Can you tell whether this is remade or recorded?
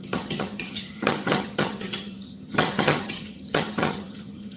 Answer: remade